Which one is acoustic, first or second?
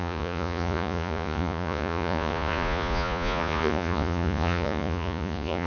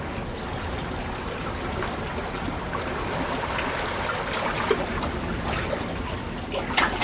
second